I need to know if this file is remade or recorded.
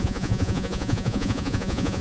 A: remade